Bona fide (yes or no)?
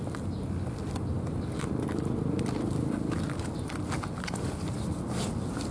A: yes